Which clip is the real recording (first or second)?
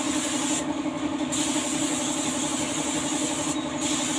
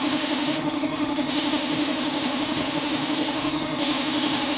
first